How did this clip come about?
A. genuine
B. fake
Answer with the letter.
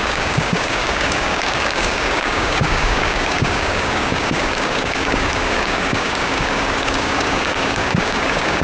B